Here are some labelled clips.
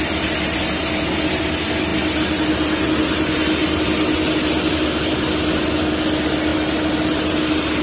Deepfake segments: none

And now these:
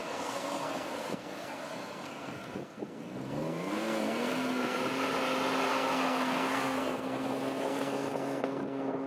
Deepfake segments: 0.0-4.8 (codec, SNAC); 5.7-9.1